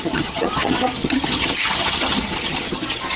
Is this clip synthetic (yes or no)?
yes